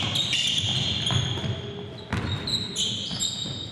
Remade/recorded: recorded